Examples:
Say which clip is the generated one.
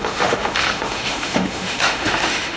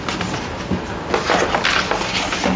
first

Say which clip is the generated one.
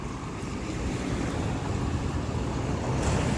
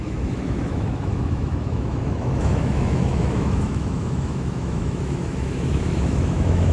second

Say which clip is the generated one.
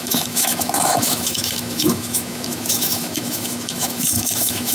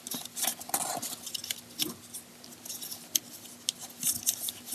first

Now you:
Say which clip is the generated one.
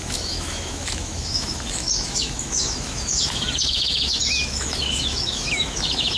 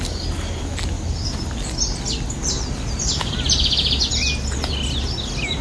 first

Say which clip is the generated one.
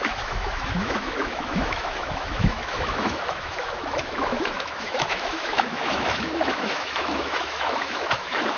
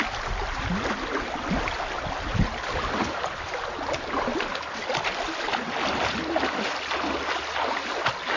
first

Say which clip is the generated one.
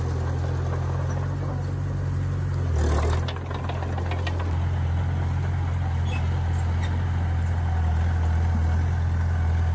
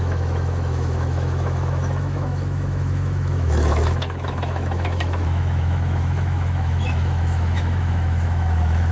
second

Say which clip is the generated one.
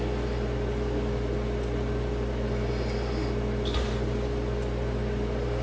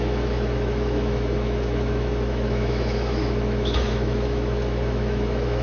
second